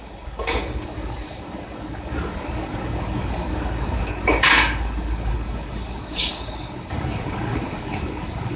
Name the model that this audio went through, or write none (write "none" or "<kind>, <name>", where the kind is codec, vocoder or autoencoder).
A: codec, DAC